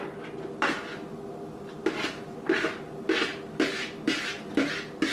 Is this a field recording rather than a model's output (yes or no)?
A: yes